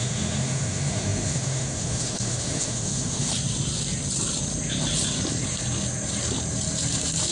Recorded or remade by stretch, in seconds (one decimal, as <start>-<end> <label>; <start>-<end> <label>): 0.0-3.3 remade; 3.3-7.3 recorded